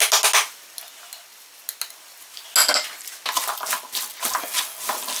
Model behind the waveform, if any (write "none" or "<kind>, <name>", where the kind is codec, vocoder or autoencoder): none